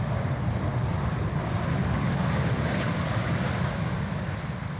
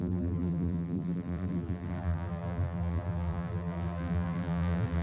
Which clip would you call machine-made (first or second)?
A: second